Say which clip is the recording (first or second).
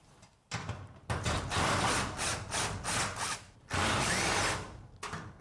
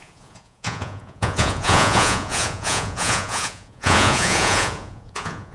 first